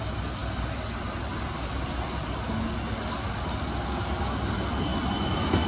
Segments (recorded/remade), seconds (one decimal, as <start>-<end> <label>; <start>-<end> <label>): 0.0-5.7 recorded